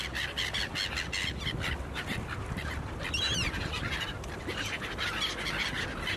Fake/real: real